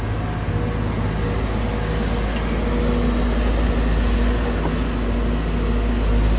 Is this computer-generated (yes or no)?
no